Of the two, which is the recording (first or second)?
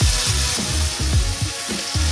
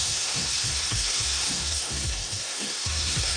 first